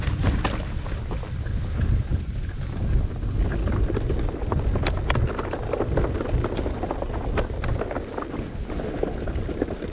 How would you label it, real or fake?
real